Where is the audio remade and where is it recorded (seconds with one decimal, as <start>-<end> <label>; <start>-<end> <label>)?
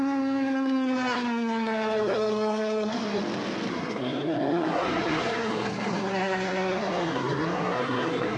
0.0-3.2 remade; 3.2-3.7 recorded; 3.7-8.4 remade